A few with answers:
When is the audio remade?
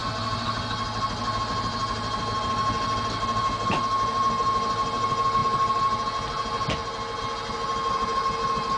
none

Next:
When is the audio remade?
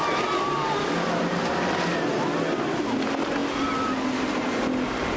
none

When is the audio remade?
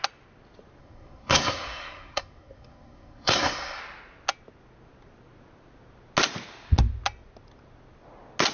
0.8-3.8